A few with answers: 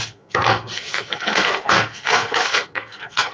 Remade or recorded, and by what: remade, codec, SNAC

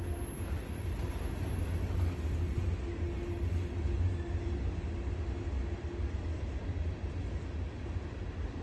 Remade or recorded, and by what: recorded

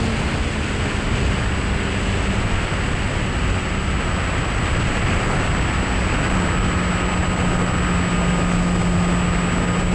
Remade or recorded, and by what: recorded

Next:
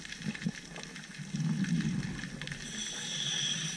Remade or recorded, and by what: recorded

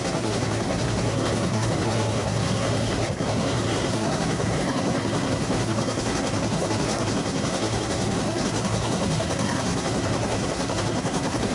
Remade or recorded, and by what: remade, codec, SNAC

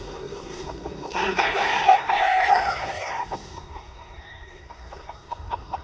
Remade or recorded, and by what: remade, codec, SNAC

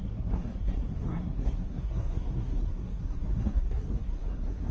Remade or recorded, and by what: remade, codec, SNAC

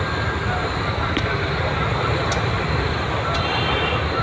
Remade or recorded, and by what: recorded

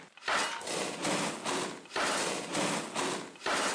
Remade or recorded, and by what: recorded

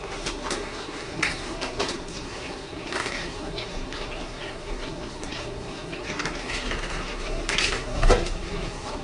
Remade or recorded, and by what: remade, codec, SNAC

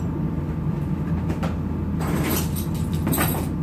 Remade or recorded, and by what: recorded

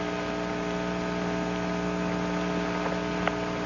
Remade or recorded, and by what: recorded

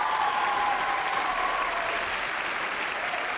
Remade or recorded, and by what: recorded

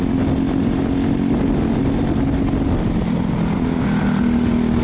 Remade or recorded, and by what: recorded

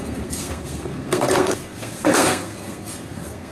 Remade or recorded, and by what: remade, codec, SNAC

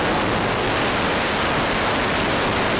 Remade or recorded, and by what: recorded